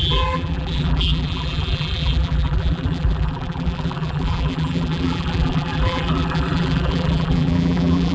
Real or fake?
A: fake